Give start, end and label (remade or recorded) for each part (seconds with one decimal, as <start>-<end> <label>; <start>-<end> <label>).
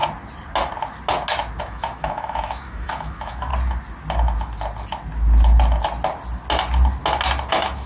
0.0-1.6 recorded; 1.6-3.5 remade; 3.5-7.5 recorded; 7.5-7.9 remade